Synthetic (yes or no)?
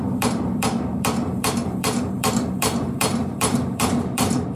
yes